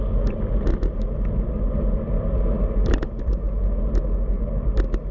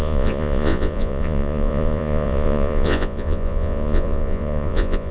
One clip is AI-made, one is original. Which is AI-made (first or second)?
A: second